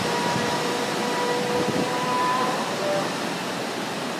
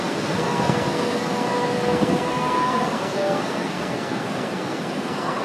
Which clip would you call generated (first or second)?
second